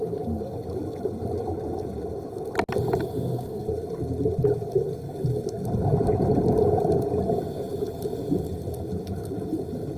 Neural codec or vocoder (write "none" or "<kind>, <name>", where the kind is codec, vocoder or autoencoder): none